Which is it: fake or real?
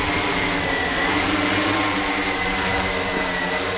real